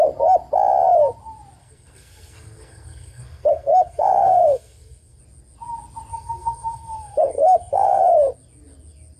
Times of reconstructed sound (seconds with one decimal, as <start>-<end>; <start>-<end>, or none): 1.6-5.2; 6.1-8.0